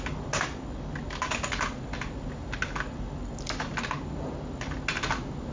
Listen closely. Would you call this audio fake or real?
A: real